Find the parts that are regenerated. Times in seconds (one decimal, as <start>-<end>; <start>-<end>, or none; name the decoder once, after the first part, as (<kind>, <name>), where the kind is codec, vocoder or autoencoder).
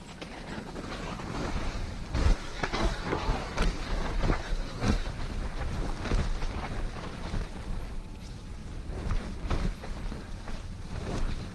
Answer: 2.2-3.6 (codec, SNAC); 4.4-5.1